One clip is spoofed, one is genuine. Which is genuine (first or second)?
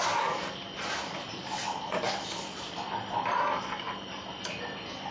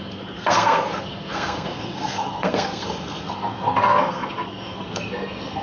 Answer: first